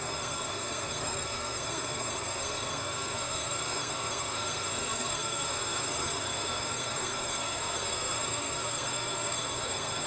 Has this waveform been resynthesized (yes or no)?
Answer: yes